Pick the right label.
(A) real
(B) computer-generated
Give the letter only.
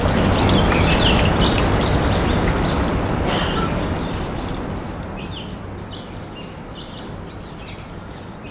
A